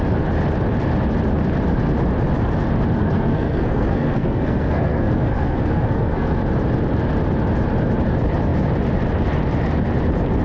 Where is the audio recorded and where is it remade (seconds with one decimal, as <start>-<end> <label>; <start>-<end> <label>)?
0.0-3.0 recorded; 3.0-6.4 remade; 6.4-10.4 recorded